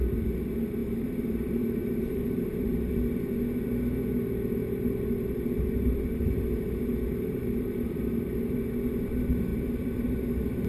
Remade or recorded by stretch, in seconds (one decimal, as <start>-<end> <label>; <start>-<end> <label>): 0.0-0.8 recorded; 0.8-2.9 remade; 2.9-4.6 recorded; 4.6-8.6 remade; 8.6-9.5 recorded; 9.5-10.2 remade; 10.2-10.7 recorded